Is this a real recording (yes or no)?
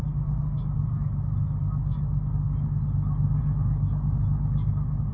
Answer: yes